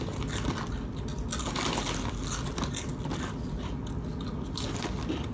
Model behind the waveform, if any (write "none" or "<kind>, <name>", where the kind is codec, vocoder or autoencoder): none